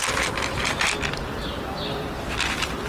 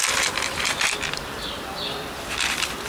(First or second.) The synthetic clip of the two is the second